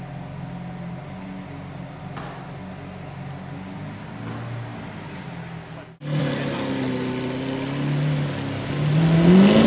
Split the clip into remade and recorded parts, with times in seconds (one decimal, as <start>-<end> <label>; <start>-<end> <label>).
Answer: 0.0-9.7 recorded